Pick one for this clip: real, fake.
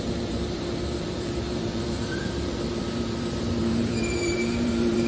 fake